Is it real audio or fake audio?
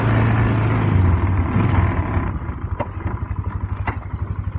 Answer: real